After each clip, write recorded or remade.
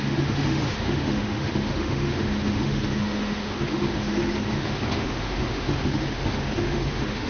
remade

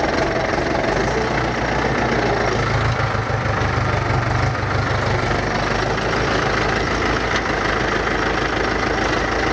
recorded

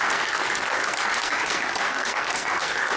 remade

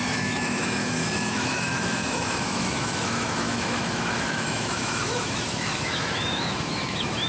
remade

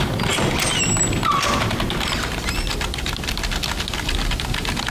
recorded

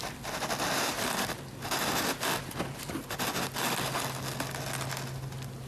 recorded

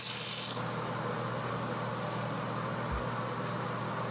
recorded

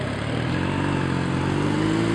recorded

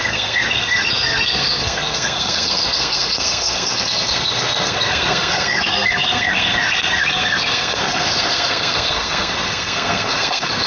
remade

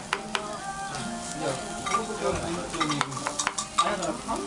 recorded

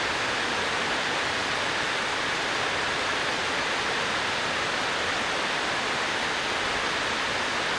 recorded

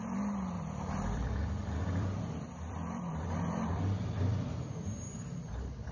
remade